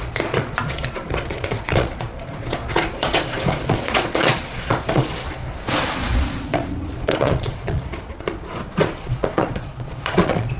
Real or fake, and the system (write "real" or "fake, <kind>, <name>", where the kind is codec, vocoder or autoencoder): fake, vocoder, Vocos